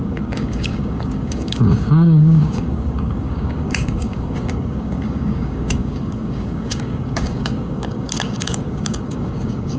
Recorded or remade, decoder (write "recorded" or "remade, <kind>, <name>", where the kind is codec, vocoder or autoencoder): remade, codec, DAC